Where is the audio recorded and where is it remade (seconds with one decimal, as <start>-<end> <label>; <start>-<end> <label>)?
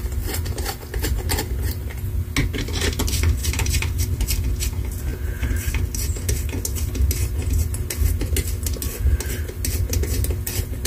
0.0-3.4 recorded; 3.4-4.1 remade; 4.1-5.1 recorded; 5.1-5.7 remade; 5.7-10.9 recorded